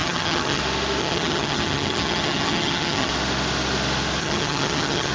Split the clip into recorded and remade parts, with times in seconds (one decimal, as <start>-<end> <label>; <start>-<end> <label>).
0.0-0.6 remade; 0.6-1.0 recorded; 1.0-3.1 remade; 3.1-4.2 recorded; 4.2-5.1 remade